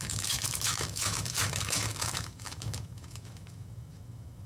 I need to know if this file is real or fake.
fake